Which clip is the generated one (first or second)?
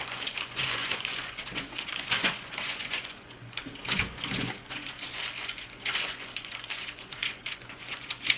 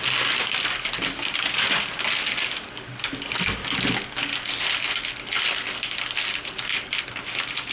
first